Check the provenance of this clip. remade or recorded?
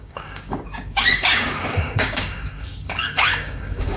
remade